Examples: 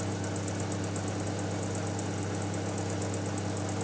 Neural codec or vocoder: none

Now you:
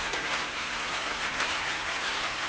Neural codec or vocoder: codec, SNAC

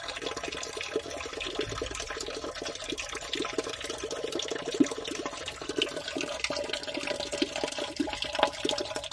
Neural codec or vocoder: none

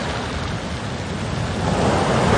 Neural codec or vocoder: none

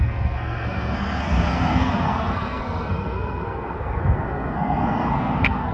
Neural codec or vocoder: codec, SNAC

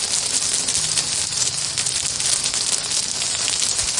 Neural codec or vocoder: none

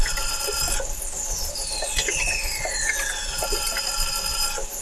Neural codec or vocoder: none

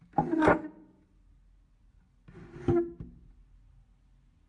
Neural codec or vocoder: none